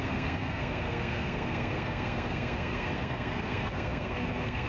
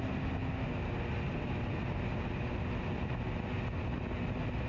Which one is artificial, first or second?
first